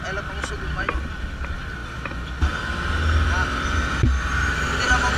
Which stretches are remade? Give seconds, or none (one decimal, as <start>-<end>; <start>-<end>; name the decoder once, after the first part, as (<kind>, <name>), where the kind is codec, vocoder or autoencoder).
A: none